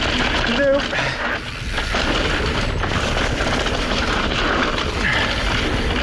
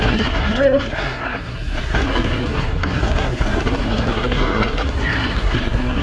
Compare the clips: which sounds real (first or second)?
first